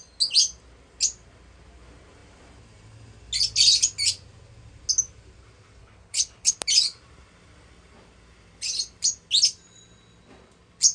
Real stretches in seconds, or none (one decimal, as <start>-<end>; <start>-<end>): 0.0-5.8; 6.5-10.9